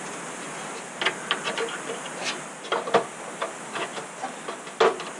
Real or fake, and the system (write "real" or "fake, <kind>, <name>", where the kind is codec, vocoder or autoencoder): real